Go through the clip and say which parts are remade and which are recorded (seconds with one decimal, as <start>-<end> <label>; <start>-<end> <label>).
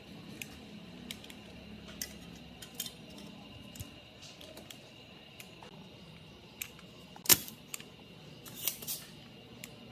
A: 0.0-9.9 recorded